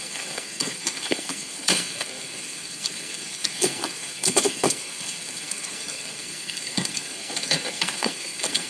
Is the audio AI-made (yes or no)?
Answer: yes